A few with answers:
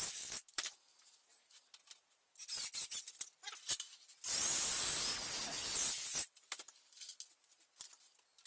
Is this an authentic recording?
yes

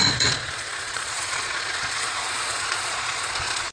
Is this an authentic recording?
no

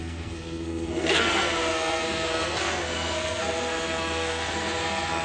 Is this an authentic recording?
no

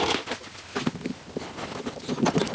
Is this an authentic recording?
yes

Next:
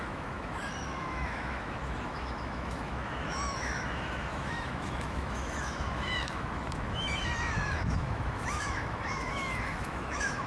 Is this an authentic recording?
no